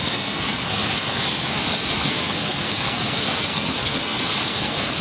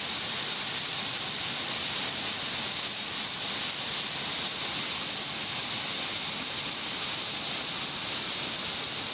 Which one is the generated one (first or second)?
first